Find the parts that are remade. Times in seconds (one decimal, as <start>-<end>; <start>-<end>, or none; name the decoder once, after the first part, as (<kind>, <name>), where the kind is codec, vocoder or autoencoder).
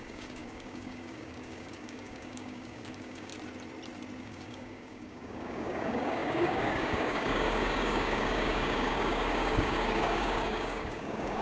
0.0-3.3 (codec, DAC); 4.2-11.4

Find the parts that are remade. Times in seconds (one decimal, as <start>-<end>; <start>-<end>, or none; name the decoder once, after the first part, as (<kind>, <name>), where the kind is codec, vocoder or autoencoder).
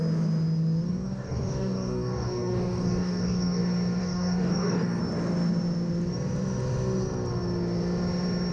0.9-3.6 (codec, DAC); 4.0-5.0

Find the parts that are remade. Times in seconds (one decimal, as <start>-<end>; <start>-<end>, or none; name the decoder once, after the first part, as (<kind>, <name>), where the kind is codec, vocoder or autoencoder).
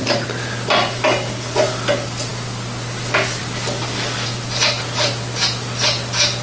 none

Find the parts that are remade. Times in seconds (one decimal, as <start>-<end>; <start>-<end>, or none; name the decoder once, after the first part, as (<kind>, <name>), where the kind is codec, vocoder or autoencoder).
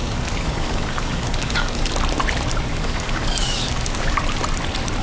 0.0-1.9 (codec, DAC); 2.7-4.2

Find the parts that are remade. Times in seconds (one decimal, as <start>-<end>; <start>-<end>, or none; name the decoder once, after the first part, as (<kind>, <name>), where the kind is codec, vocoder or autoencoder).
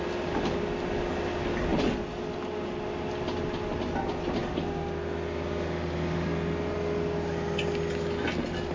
none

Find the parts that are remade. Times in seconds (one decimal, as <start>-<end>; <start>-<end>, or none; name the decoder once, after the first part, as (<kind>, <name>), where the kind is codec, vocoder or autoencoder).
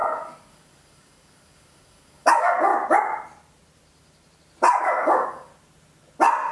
0.0-2.7 (codec, DAC); 4.8-5.5